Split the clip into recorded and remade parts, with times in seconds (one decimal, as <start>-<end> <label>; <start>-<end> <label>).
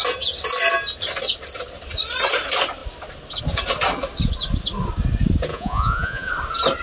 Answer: 0.0-5.5 recorded; 5.5-6.3 remade; 6.3-6.8 recorded